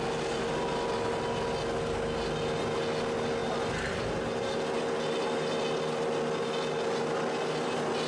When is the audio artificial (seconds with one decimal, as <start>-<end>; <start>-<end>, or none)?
3.4-4.6